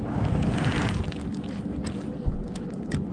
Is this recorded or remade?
recorded